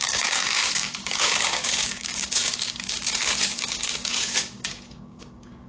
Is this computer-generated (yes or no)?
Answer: yes